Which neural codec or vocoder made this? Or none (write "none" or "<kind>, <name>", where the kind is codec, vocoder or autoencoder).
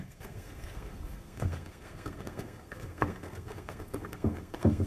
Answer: codec, SNAC